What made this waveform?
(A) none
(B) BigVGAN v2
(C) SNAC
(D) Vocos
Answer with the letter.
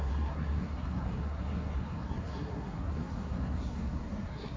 C